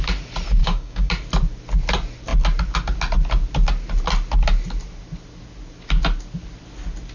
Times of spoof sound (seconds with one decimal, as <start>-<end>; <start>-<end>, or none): 0.6-1.1